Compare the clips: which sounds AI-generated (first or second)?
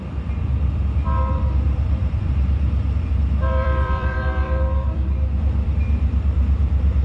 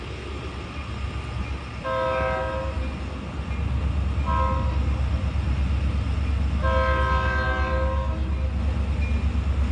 first